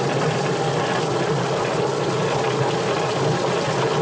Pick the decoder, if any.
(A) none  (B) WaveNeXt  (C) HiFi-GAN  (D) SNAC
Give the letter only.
A